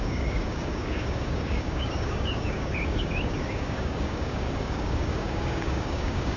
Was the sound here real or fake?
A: fake